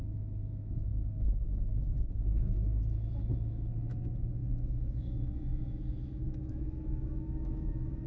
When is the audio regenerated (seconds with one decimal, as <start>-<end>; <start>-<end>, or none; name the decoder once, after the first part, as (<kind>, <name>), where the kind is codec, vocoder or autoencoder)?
0.0-8.1 (autoencoder, DAC-VAE)